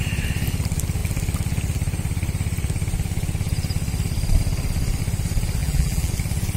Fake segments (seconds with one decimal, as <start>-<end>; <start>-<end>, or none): 5.6-6.1